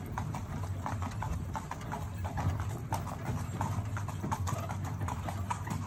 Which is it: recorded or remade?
recorded